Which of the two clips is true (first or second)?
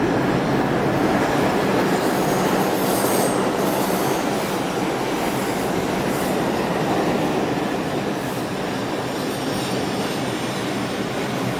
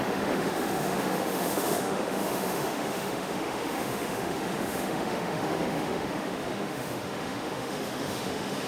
first